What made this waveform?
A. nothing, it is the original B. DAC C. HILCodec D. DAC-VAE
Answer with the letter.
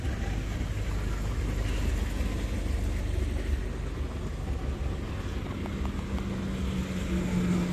A